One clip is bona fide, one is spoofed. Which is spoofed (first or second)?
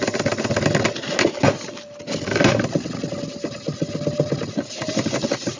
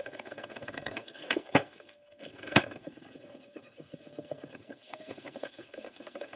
second